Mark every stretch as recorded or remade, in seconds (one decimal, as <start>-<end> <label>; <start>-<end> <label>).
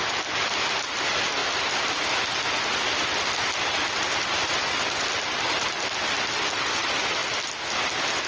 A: 0.0-8.3 recorded